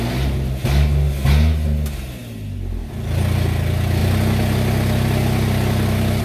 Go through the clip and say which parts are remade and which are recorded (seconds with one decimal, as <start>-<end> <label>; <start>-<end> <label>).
0.0-6.2 recorded